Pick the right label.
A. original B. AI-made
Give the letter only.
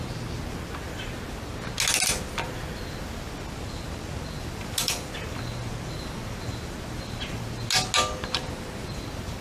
A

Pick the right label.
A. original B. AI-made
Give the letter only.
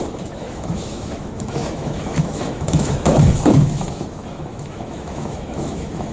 B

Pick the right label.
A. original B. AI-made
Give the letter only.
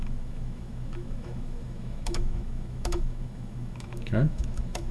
B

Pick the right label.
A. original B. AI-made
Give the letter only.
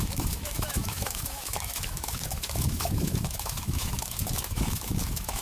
B